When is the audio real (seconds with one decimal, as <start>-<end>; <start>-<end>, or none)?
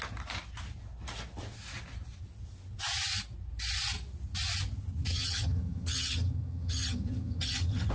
0.0-5.1